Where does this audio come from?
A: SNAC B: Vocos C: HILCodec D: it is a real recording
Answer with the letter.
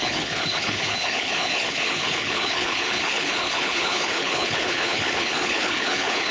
C